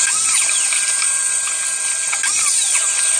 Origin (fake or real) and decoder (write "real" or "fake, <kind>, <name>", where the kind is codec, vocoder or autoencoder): real